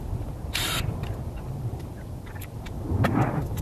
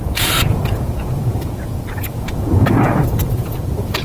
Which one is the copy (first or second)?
second